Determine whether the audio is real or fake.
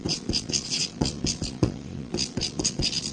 fake